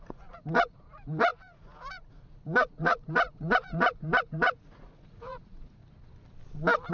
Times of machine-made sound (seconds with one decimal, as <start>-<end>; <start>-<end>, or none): 0.0-5.8

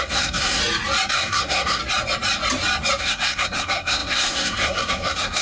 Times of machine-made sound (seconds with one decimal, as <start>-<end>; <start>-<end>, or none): 0.0-0.6; 1.1-1.8; 3.0-5.4

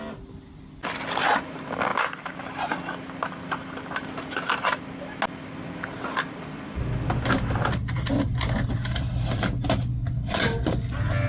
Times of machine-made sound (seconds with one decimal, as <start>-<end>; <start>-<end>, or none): none

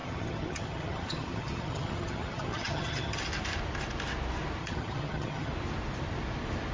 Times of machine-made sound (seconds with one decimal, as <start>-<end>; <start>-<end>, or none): 0.0-3.2; 4.6-5.5

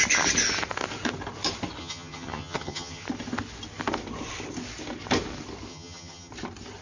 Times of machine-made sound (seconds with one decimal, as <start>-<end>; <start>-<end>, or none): 1.8-3.0; 5.7-6.3

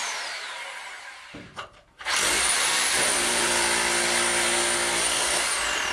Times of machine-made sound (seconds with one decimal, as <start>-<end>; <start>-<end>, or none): 0.0-3.5